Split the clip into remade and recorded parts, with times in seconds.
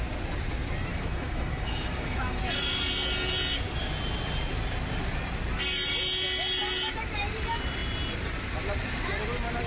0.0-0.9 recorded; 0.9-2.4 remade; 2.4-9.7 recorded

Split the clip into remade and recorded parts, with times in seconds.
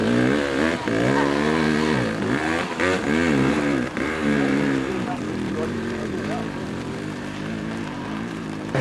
0.0-3.5 recorded; 3.5-8.8 remade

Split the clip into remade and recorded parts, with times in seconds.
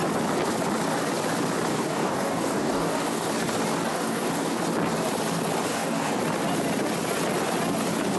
0.0-1.7 recorded; 1.7-3.3 remade; 3.3-3.9 recorded; 3.9-4.6 remade; 4.6-5.7 recorded; 5.7-6.2 remade; 6.2-8.2 recorded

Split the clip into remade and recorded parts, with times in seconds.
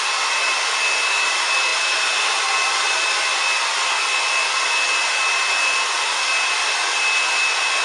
0.0-7.8 recorded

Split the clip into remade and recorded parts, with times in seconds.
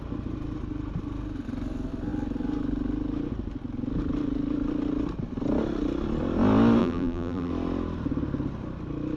0.0-6.8 recorded; 6.8-7.5 remade; 7.5-9.2 recorded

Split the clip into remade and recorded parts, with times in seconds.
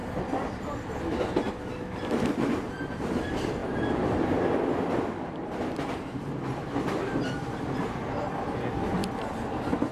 0.0-9.9 recorded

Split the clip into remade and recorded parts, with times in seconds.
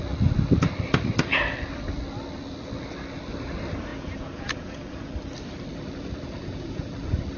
0.0-3.9 recorded; 3.9-5.1 remade; 5.1-6.4 recorded; 6.4-6.9 remade; 6.9-7.4 recorded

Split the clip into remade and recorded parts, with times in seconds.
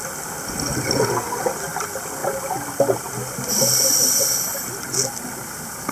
0.0-5.9 recorded